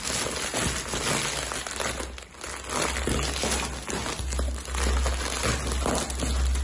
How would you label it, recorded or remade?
recorded